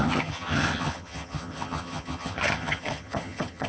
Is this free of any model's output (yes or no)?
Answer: no